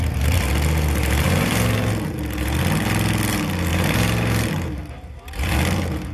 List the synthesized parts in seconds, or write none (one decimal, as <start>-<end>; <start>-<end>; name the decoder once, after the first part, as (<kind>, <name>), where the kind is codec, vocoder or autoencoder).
1.0-1.9 (vocoder, BigVGAN v2); 3.7-4.5

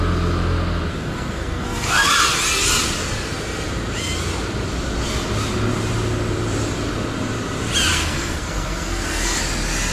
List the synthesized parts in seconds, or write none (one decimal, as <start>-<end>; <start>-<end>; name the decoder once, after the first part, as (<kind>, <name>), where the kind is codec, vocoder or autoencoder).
0.9-2.1 (codec, SNAC); 7.9-9.4

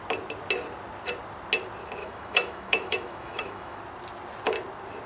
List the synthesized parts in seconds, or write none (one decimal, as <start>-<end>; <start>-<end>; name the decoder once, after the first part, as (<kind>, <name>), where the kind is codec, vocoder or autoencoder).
2.0-3.8 (autoencoder, DAC-VAE)

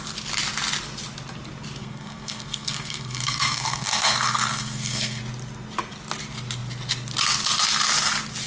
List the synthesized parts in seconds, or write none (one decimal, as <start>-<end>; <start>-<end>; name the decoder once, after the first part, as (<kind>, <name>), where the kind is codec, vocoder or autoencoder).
1.8-5.2 (codec, SNAC)

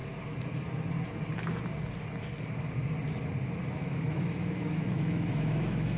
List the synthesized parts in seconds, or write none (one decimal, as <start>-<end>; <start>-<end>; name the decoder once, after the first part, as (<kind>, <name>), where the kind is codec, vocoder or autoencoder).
3.6-6.0 (autoencoder, DAC-VAE)